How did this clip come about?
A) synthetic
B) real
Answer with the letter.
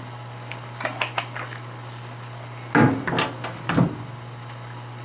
B